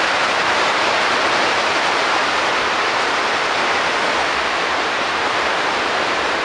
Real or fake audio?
fake